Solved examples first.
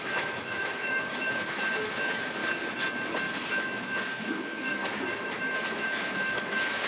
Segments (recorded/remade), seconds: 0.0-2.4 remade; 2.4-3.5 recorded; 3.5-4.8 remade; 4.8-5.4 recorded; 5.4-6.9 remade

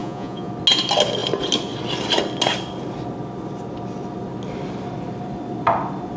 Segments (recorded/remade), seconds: 0.0-0.5 remade; 0.5-6.2 recorded

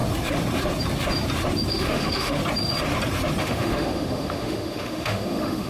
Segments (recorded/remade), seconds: 0.0-1.7 recorded; 1.7-2.4 remade; 2.4-3.4 recorded; 3.4-5.7 remade

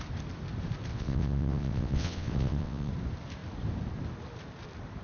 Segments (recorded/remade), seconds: 0.0-0.9 recorded; 0.9-2.9 remade; 2.9-5.0 recorded